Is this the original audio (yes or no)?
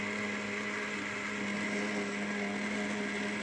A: yes